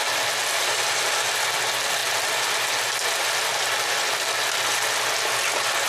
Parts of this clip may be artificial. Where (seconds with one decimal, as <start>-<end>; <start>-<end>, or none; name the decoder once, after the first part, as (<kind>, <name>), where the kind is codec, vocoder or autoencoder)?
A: none